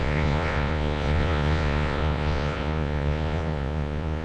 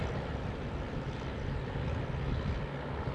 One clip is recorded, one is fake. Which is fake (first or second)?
first